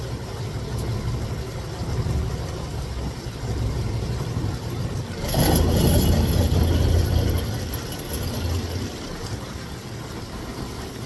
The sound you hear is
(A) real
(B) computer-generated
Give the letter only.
A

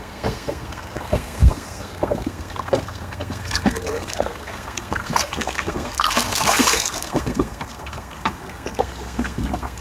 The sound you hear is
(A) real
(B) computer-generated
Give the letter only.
B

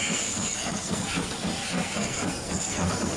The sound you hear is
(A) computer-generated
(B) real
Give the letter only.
A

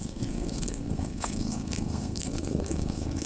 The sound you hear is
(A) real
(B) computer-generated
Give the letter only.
B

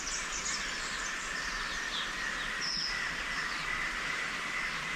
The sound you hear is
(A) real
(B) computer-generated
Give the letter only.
A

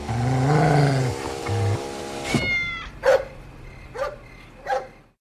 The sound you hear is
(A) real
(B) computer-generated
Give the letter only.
A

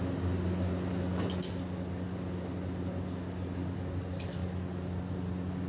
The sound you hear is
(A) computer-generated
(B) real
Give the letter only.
B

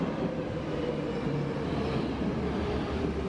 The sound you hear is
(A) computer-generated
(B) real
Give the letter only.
B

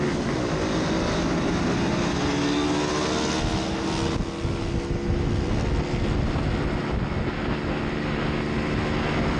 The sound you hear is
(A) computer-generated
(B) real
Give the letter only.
B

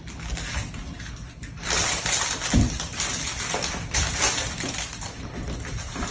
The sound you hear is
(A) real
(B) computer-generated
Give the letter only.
A